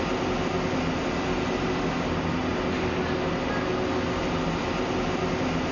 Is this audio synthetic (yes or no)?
no